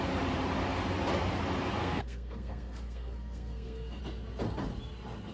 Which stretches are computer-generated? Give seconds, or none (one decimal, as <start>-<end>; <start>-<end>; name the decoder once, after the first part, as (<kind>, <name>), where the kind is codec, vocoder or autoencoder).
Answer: 1.8-4.0 (codec, SNAC)